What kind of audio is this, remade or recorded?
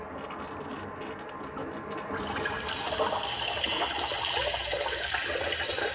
recorded